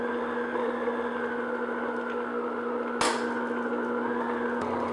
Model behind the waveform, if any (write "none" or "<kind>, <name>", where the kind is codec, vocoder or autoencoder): none